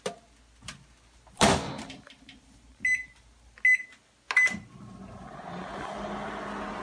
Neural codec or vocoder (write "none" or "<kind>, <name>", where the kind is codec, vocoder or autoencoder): none